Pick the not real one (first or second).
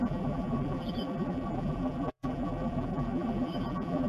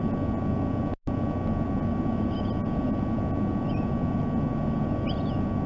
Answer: first